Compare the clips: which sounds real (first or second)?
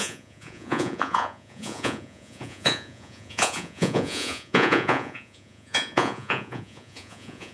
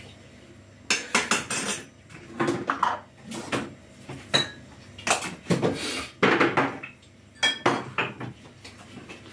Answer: second